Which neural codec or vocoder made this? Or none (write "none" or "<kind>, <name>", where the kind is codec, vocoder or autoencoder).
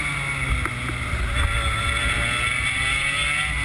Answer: none